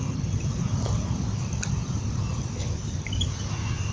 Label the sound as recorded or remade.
recorded